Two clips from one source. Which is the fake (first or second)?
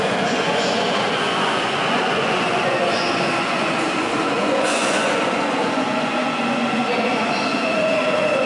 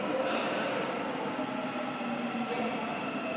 first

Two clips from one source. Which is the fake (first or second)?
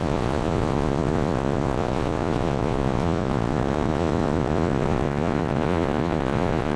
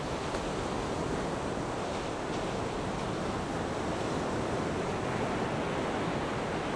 first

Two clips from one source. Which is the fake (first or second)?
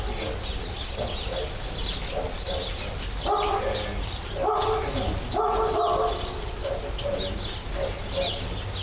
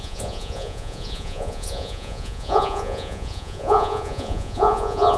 second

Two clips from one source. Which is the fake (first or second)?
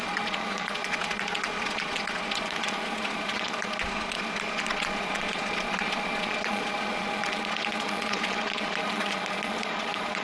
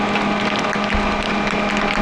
first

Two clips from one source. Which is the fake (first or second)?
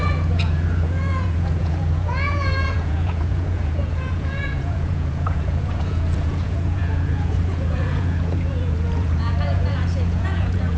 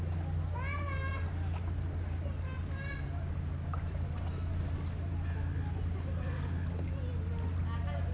first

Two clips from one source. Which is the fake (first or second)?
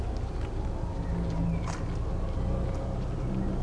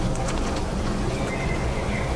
second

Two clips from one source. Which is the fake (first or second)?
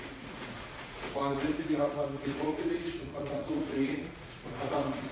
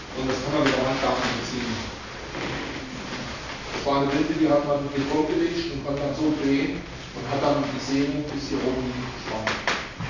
first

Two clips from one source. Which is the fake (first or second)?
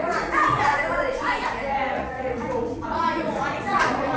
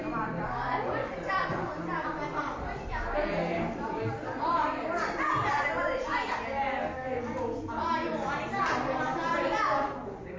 first